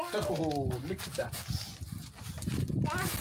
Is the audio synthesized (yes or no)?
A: no